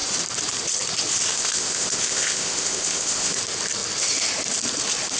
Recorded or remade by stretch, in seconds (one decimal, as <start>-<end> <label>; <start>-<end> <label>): 0.0-1.3 recorded; 1.3-3.4 remade; 3.4-5.2 recorded